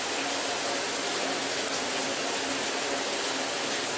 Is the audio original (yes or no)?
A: yes